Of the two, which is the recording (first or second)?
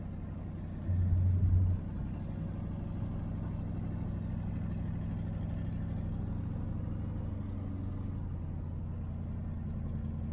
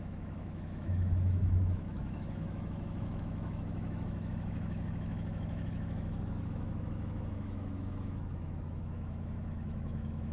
first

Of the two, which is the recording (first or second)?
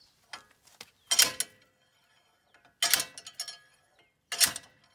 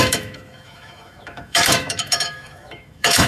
first